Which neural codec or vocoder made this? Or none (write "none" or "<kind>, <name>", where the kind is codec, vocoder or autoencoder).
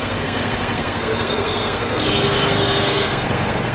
codec, SNAC